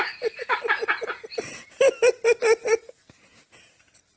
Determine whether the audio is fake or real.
real